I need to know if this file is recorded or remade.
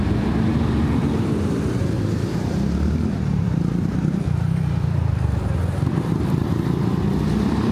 remade